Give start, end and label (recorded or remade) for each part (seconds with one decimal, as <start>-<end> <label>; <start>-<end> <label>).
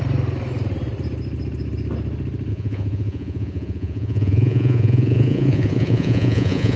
0.0-2.5 recorded; 2.5-6.8 remade